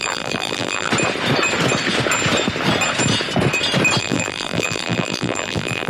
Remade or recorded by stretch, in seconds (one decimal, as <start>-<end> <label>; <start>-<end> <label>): 0.0-0.9 remade; 0.9-4.0 recorded; 4.0-5.9 remade